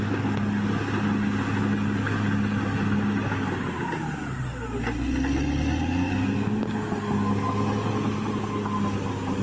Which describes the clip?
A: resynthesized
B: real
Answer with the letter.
B